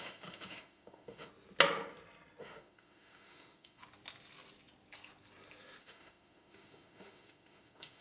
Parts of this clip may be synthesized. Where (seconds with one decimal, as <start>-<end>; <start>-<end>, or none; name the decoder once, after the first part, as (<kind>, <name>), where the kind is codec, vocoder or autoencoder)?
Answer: 0.0-1.3 (autoencoder, DAC-VAE); 2.4-3.8; 5.8-8.0